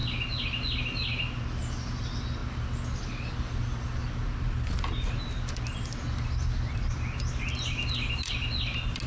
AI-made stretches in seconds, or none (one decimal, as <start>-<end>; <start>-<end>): none